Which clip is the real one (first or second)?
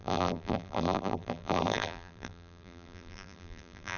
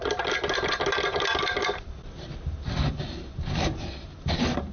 second